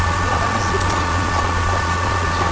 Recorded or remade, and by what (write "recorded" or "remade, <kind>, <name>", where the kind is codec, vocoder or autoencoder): remade, vocoder, Vocos